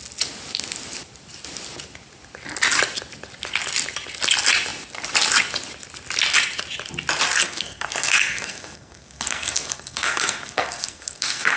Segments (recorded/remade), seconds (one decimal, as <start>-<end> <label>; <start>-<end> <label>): 0.0-7.4 recorded; 7.4-11.6 remade